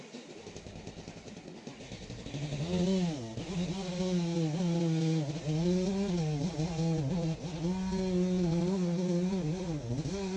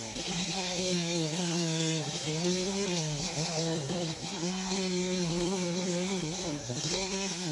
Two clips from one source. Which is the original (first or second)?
first